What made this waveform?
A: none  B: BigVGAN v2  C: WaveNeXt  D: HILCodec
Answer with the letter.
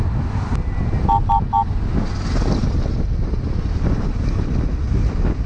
A